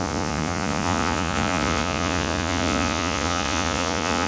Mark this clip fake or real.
fake